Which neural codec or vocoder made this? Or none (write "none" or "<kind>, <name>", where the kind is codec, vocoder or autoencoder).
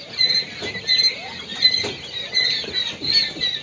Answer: none